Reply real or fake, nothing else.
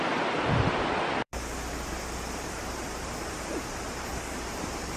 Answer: fake